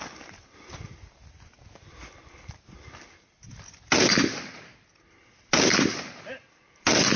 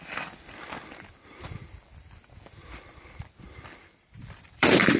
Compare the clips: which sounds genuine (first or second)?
first